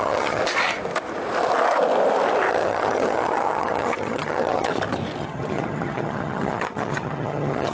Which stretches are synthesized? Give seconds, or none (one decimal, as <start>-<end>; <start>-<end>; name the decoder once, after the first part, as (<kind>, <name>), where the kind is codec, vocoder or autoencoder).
0.0-0.4 (vocoder, HiFi-GAN); 2.5-4.7; 5.2-7.7